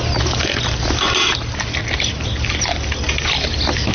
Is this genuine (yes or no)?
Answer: yes